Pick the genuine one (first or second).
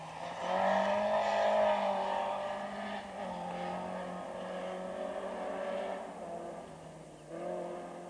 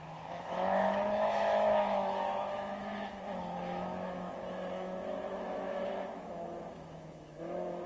first